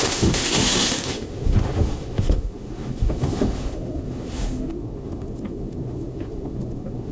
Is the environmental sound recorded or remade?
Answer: remade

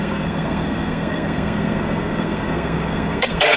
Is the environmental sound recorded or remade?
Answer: remade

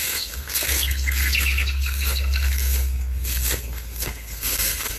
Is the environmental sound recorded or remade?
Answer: remade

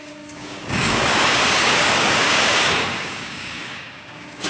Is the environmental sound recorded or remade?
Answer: remade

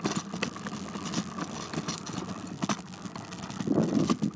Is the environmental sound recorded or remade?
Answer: recorded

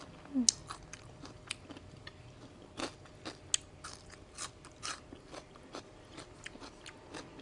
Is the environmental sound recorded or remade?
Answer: recorded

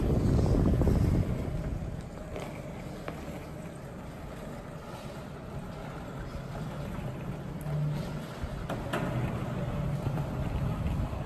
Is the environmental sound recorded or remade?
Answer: recorded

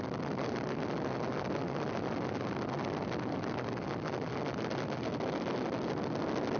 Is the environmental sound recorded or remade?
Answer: recorded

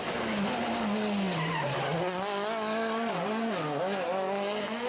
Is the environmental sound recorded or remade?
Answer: recorded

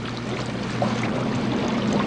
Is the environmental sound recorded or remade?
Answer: recorded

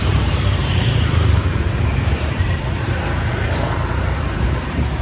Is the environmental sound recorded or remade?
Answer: remade